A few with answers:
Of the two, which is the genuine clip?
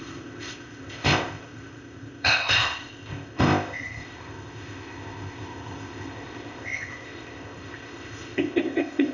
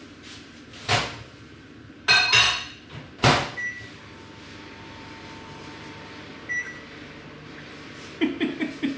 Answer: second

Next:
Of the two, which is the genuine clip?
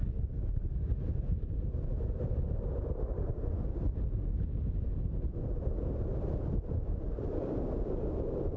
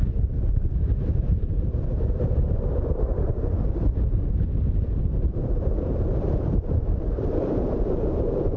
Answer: first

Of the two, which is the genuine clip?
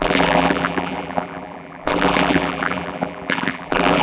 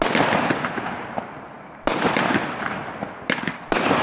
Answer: second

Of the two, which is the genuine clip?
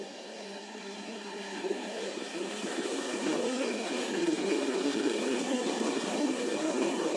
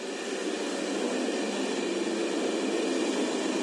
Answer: second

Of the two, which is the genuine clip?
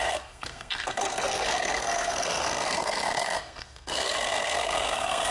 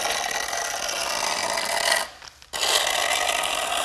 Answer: second